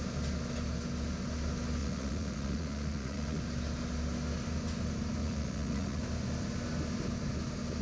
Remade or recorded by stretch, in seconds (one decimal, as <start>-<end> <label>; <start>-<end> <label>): 0.0-1.8 recorded; 1.8-3.4 remade; 3.4-5.2 recorded; 5.2-6.0 remade; 6.0-7.8 recorded